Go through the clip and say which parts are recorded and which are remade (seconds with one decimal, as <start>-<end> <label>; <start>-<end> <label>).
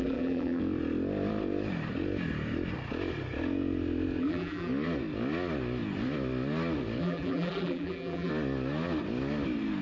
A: 0.0-0.6 remade; 0.6-4.2 recorded; 4.2-4.7 remade; 4.7-7.0 recorded; 7.0-8.3 remade; 8.3-9.8 recorded